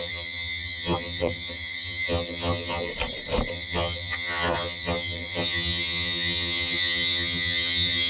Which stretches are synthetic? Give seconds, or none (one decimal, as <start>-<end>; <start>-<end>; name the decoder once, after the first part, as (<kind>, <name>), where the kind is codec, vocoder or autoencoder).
0.0-2.9 (vocoder, HiFi-GAN); 3.5-8.1

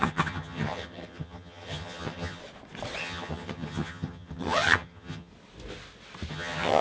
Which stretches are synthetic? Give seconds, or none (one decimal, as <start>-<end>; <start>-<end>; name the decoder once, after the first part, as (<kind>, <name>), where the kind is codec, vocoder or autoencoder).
0.0-2.4 (vocoder, HiFi-GAN); 3.0-5.3; 6.3-6.8

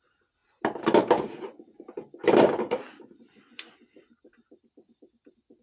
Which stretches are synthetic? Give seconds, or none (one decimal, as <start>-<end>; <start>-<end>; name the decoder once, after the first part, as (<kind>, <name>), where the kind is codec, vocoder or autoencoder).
none

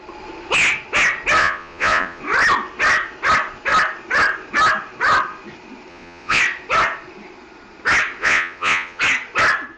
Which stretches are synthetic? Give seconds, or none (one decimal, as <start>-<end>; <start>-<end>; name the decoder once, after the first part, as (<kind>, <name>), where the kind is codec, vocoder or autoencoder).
1.4-2.2 (vocoder, Vocos); 5.9-6.4; 8.2-9.0

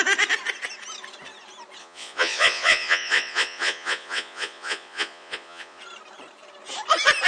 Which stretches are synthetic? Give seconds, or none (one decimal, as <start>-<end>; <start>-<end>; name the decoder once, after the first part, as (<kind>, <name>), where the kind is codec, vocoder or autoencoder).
1.8-5.8 (vocoder, Vocos)

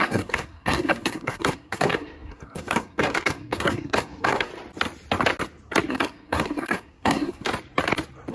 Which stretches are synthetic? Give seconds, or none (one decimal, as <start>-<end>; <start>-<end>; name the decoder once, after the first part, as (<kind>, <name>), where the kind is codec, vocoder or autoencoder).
0.0-4.5 (codec, SNAC); 5.9-7.5

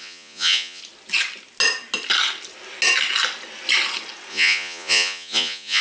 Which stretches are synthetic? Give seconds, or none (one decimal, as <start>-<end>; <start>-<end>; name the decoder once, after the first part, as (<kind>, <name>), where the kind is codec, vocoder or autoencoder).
0.0-0.8 (vocoder, Vocos); 4.3-5.8

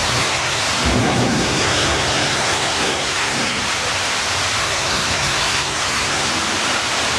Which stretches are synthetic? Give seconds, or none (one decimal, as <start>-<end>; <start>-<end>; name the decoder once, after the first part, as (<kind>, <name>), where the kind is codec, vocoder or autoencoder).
0.0-0.6 (codec, SNAC); 1.0-3.6; 4.6-6.3